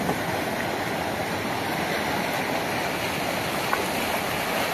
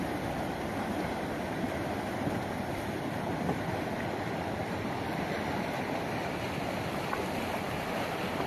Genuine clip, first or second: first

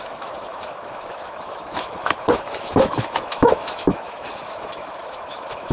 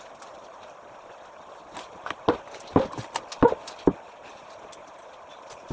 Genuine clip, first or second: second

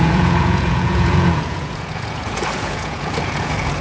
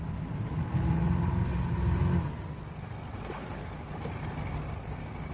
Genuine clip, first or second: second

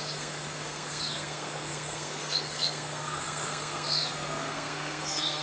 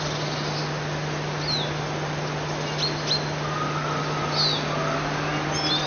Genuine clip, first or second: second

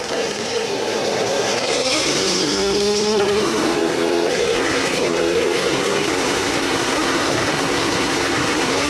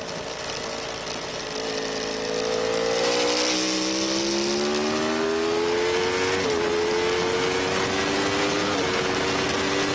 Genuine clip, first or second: second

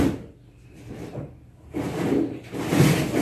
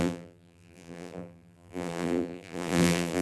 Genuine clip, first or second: first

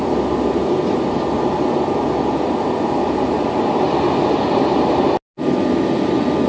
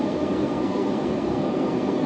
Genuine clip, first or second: first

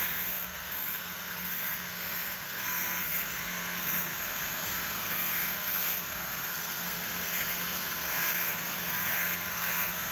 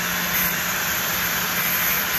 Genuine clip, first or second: second